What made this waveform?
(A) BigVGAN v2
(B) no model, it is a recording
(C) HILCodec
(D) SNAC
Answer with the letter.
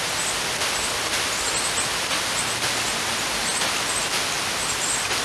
B